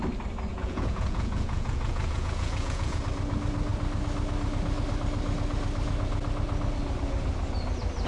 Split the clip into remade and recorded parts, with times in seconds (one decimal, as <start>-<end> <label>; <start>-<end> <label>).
0.0-0.5 recorded; 0.5-3.0 remade; 3.0-8.1 recorded